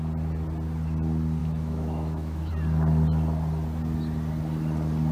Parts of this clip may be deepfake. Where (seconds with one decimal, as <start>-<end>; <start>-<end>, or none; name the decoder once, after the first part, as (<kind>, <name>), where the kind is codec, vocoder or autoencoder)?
1.4-2.5 (autoencoder, DAC-VAE)